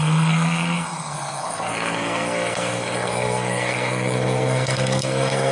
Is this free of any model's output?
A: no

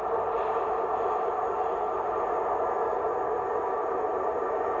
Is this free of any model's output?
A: yes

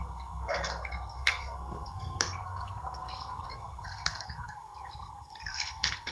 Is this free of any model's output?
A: no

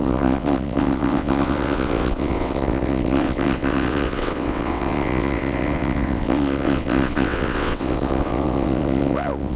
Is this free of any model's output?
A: no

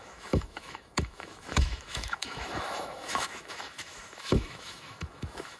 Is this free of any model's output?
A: no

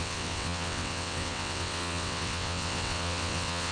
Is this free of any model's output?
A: no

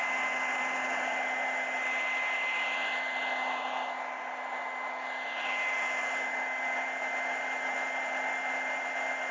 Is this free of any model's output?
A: yes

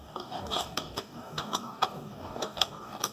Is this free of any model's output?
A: no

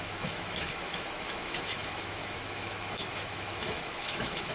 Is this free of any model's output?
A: no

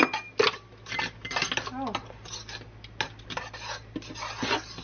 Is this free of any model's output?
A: yes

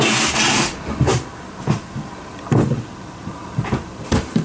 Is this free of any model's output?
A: yes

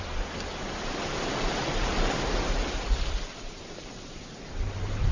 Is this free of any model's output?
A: yes